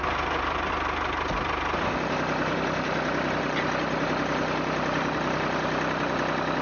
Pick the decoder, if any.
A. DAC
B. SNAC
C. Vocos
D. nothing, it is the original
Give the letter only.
D